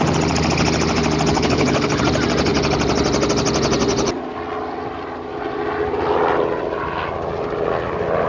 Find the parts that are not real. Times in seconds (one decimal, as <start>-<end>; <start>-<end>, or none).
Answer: 1.3-2.0